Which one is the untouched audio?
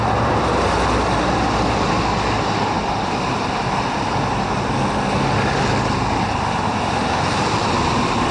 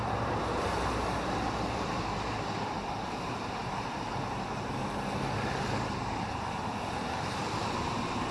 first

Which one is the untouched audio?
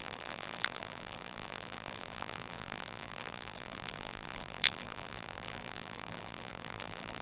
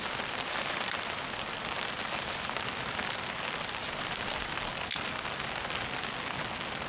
second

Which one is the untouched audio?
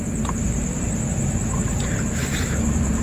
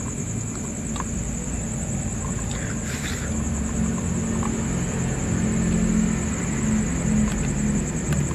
second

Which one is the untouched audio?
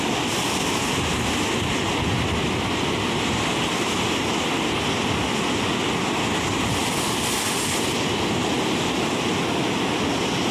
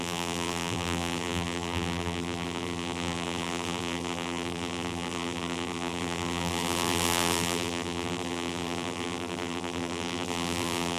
first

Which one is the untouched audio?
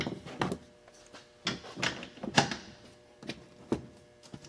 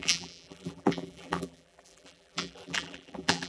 first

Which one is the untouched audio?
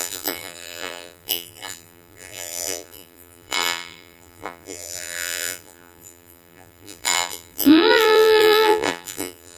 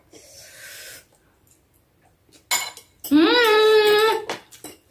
second